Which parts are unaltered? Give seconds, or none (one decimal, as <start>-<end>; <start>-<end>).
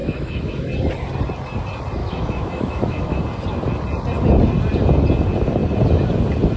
0.7-2.0; 3.2-6.6